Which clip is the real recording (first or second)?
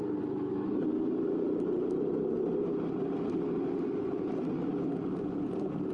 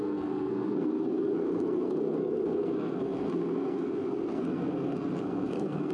first